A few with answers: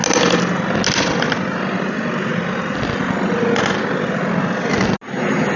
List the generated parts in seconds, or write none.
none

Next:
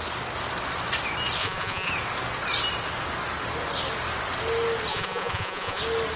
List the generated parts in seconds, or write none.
1.4-1.9 (vocoder, Vocos); 4.9-5.8

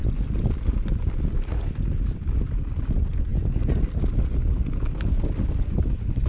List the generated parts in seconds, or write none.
none

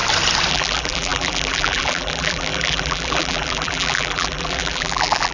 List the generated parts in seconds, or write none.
0.5-5.3 (vocoder, BigVGAN v2)

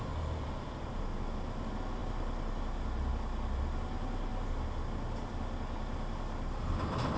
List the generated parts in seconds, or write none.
none

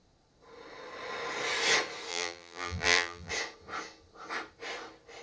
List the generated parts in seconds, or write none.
2.1-3.3 (vocoder, BigVGAN v2)

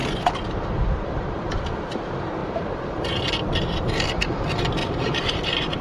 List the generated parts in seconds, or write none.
2.4-3.1 (vocoder, BigVGAN v2); 4.8-5.8

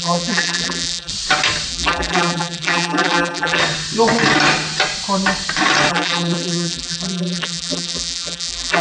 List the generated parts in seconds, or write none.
0.0-1.1 (vocoder, BigVGAN v2); 1.7-3.6; 5.9-8.8